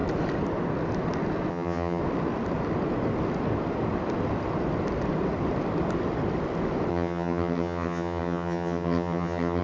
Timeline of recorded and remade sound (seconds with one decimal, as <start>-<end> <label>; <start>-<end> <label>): 0.0-1.5 recorded; 1.5-2.0 remade; 2.0-6.9 recorded; 6.9-9.6 remade